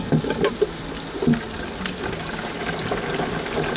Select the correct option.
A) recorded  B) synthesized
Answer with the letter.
A